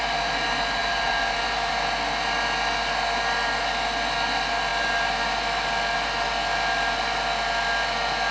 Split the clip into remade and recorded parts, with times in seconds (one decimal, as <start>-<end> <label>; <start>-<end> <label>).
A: 0.0-8.3 recorded